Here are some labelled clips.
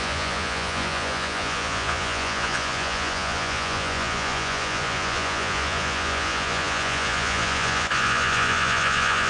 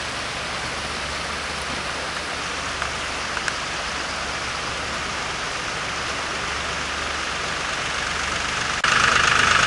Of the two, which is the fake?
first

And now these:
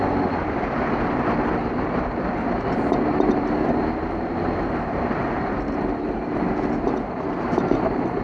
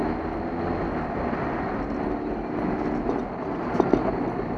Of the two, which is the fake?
first